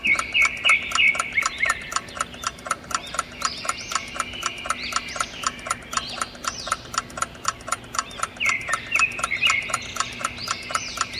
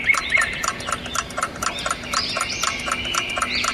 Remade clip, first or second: first